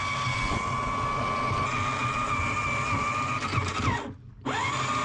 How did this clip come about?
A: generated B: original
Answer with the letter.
B